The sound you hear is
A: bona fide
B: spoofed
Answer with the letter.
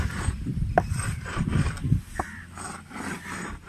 A